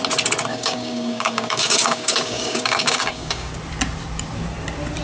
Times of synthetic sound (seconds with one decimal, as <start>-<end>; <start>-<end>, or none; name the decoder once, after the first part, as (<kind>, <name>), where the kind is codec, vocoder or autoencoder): 0.5-3.5 (codec, DAC)